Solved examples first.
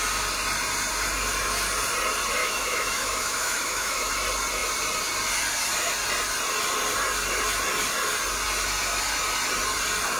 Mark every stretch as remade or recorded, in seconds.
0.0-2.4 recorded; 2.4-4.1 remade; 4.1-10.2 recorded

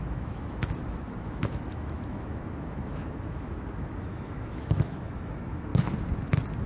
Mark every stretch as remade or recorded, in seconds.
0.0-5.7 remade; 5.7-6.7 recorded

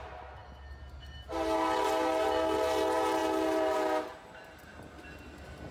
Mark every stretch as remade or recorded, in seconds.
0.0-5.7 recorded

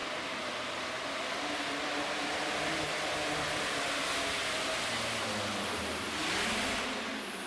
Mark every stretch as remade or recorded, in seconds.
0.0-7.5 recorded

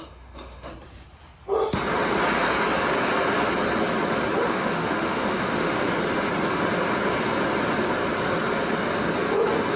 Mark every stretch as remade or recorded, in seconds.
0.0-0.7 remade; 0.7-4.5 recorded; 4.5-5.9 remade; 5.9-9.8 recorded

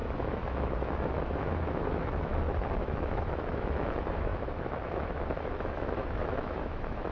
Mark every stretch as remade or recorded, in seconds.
0.0-2.3 remade; 2.3-2.8 recorded; 2.8-7.1 remade

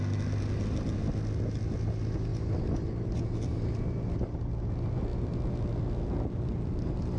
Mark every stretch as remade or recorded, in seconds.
0.0-7.2 recorded